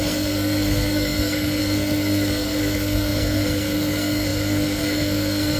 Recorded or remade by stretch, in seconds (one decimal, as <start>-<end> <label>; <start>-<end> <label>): 0.0-5.6 remade